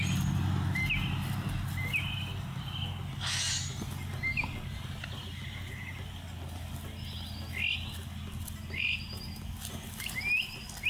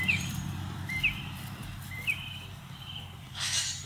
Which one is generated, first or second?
second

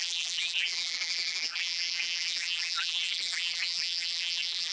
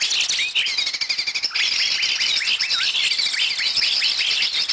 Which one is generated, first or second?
first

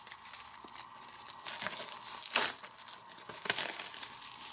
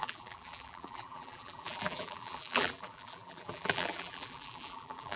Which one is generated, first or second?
second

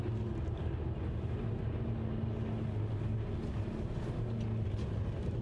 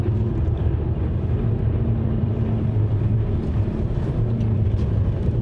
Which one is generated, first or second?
second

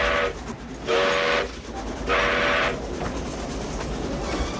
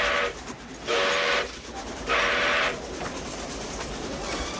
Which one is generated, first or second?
second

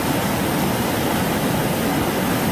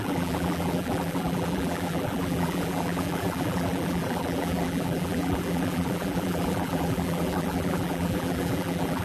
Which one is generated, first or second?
second